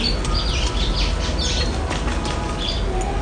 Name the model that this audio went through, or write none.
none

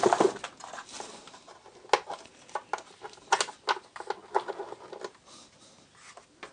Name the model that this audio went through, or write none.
none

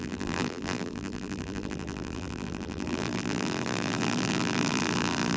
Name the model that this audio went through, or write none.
vocoder, BigVGAN v2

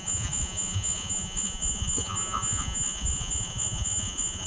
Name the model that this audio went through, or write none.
vocoder, Vocos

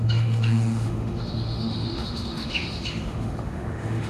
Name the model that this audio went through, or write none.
autoencoder, DAC-VAE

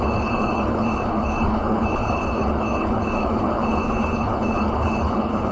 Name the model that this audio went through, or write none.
codec, HILCodec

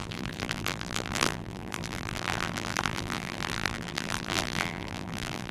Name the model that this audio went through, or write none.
vocoder, BigVGAN v2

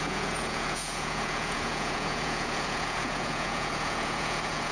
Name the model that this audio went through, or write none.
vocoder, Vocos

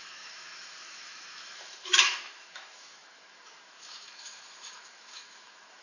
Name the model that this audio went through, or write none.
autoencoder, DAC-VAE